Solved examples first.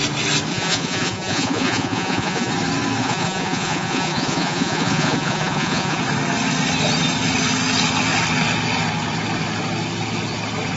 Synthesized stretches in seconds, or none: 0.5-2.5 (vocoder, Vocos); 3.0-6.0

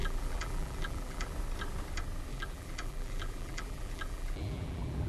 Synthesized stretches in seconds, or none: 0.0-1.3 (vocoder, BigVGAN v2); 2.3-5.1

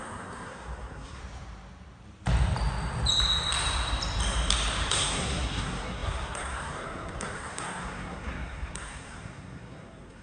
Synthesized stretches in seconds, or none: 0.0-1.2 (codec, SNAC); 4.9-10.2

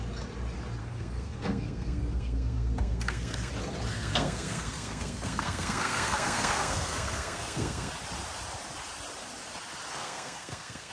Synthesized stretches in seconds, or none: 0.8-3.5 (codec, SNAC); 3.9-7.9; 9.9-10.9